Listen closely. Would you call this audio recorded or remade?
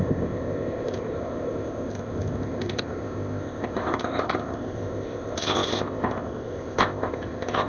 remade